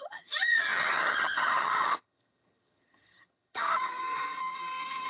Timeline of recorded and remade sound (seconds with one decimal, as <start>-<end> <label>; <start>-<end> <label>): 0.0-5.1 remade